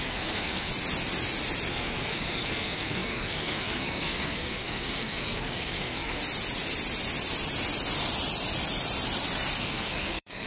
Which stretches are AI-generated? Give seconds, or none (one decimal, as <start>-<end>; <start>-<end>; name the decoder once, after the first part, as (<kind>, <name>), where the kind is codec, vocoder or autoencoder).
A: 0.0-0.7 (codec, SNAC); 1.7-6.2; 9.6-10.5